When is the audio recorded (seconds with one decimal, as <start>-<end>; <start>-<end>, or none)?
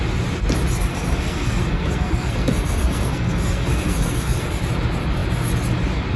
0.0-0.9; 4.6-6.2